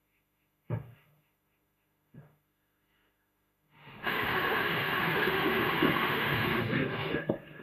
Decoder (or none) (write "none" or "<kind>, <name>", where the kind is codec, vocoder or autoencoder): autoencoder, DAC-VAE